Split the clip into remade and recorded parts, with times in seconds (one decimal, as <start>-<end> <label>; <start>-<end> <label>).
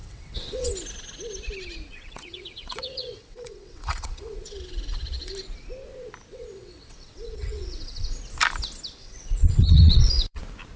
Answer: 0.0-0.7 remade; 0.7-1.9 recorded; 1.9-5.3 remade; 5.3-6.3 recorded; 6.3-8.2 remade; 8.2-9.0 recorded; 9.0-10.4 remade; 10.4-10.8 recorded